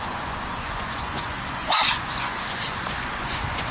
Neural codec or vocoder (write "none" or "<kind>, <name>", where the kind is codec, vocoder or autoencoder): vocoder, Vocos